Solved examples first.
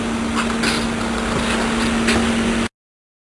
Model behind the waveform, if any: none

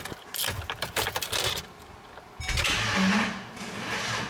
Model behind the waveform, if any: none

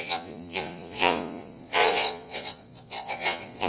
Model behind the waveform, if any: vocoder, Vocos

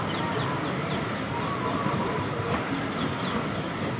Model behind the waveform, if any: none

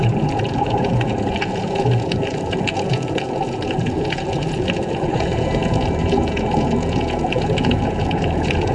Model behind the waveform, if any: vocoder, Vocos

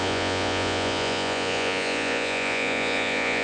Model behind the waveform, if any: vocoder, Vocos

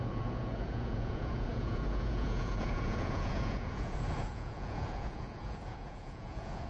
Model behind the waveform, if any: vocoder, Vocos